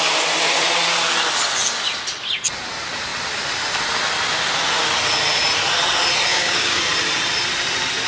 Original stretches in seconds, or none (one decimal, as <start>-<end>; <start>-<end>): 0.0-6.3; 6.8-8.1